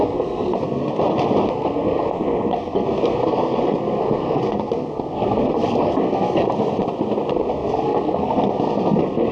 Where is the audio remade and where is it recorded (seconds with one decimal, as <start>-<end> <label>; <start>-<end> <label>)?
0.0-0.9 remade; 0.9-1.5 recorded; 1.5-6.4 remade; 6.4-7.3 recorded; 7.3-9.3 remade